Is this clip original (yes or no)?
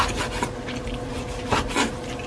yes